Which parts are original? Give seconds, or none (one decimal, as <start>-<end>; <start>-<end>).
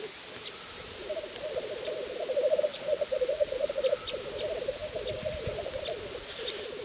0.0-2.7; 3.8-6.8